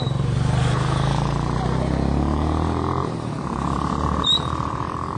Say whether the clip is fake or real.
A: fake